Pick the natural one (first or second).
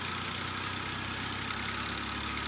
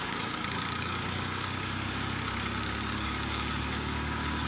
first